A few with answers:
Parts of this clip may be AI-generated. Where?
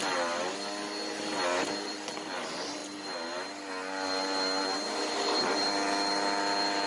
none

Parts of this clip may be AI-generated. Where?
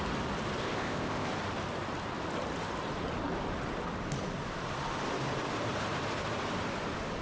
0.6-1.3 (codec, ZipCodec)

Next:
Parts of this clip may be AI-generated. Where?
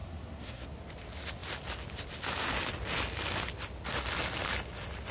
0.0-0.7 (codec, SNAC)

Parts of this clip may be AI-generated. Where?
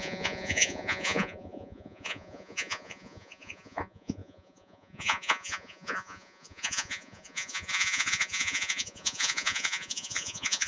0.0-10.7 (vocoder, Vocos)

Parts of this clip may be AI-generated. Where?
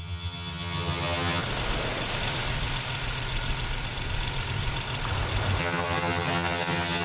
0.0-1.4 (vocoder, HiFi-GAN); 5.6-7.0